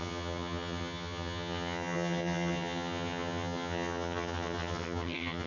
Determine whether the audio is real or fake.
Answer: fake